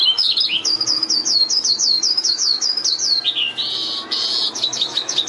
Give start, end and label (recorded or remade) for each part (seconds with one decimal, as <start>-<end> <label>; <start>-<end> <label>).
0.0-2.8 remade; 2.8-4.5 recorded; 4.5-5.3 remade